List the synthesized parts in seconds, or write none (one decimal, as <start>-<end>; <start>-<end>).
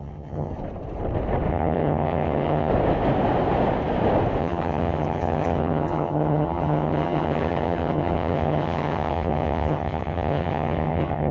0.0-0.5; 1.5-2.7; 4.4-11.3